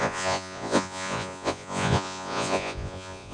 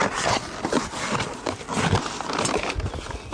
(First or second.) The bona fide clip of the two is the second